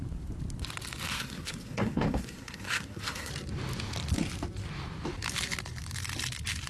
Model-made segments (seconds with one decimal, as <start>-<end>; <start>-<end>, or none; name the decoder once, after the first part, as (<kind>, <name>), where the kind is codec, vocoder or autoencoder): 1.1-3.3 (codec, SNAC)